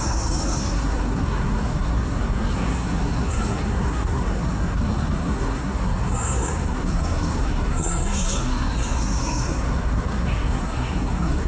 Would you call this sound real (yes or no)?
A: no